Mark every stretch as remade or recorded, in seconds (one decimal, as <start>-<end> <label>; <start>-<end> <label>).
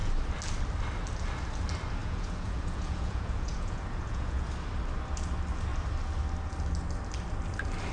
0.0-2.0 recorded; 2.0-4.5 remade; 4.5-7.9 recorded